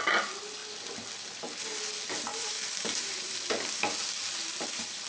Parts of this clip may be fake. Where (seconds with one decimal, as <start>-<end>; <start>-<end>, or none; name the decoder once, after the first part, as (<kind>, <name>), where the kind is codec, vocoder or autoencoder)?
2.3-3.3 (vocoder, BigVGAN v2)

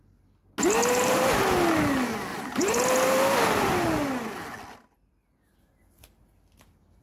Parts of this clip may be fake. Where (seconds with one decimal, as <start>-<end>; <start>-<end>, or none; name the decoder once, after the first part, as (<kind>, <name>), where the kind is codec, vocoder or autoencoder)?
0.8-1.4 (vocoder, BigVGAN v2); 2.3-3.2

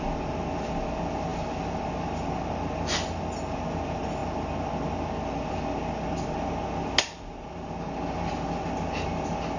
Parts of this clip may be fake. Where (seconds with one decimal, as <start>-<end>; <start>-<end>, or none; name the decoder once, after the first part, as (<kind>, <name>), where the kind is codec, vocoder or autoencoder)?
none

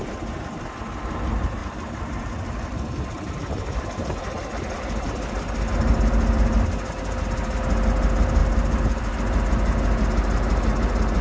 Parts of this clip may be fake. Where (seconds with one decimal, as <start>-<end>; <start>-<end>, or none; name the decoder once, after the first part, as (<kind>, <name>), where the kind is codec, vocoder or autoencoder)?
1.6-3.3 (vocoder, BigVGAN v2); 8.4-9.1